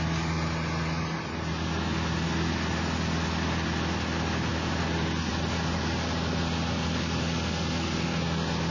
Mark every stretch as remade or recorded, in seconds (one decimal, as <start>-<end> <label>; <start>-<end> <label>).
0.0-8.7 recorded